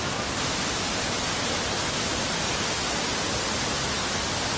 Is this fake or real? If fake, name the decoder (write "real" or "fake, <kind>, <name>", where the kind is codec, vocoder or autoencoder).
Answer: real